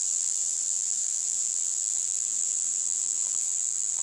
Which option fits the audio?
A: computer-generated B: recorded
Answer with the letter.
A